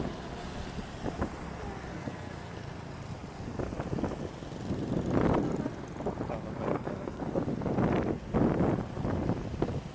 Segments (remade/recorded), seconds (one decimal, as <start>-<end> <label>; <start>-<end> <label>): 0.0-1.9 recorded; 1.9-2.5 remade; 2.5-6.7 recorded; 6.7-7.2 remade; 7.2-9.9 recorded